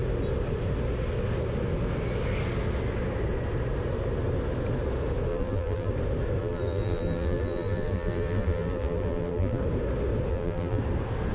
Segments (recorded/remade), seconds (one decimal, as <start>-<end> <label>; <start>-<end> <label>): 0.0-5.3 recorded; 5.3-5.9 remade; 5.9-6.4 recorded; 6.4-9.6 remade; 9.6-10.3 recorded; 10.3-10.8 remade; 10.8-11.3 recorded